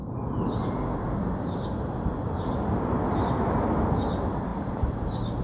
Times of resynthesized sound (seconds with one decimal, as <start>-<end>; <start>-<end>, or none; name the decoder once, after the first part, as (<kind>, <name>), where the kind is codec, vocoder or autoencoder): none